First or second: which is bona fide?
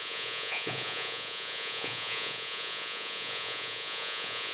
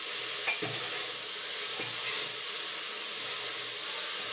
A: second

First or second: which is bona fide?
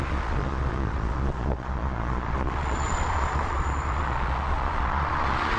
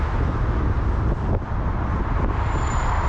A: second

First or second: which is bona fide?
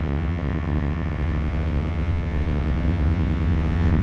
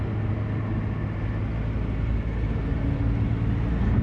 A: second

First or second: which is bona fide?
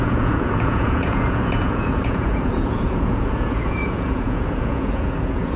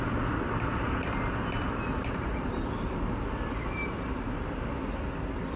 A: second